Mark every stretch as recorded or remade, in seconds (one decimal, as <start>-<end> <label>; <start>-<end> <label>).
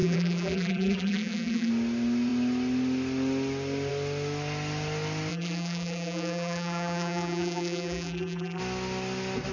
0.0-1.7 remade; 1.7-5.3 recorded; 5.3-8.6 remade; 8.6-9.5 recorded